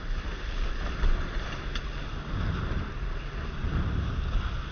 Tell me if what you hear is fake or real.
real